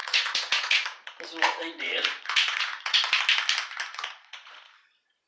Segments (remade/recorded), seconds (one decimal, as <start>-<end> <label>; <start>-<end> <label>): 0.0-3.2 remade; 3.2-3.9 recorded; 3.9-4.7 remade; 4.7-5.3 recorded